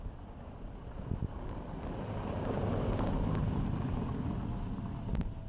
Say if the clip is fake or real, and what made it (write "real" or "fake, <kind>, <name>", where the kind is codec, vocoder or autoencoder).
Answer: real